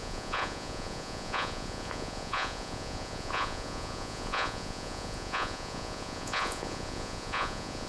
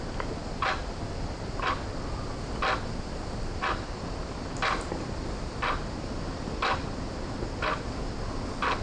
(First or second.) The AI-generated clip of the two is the first